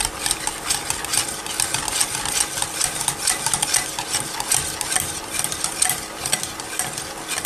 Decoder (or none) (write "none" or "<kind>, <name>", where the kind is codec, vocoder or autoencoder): none